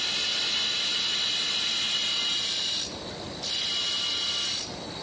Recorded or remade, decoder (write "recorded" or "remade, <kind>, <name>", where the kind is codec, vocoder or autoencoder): recorded